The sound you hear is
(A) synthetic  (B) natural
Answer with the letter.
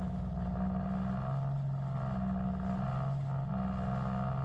B